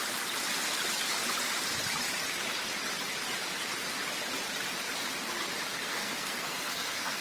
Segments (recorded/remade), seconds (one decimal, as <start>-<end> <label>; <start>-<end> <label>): 0.0-5.7 recorded; 5.7-7.2 remade